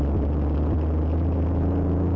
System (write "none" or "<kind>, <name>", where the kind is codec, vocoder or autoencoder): none